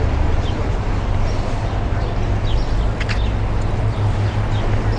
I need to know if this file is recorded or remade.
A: recorded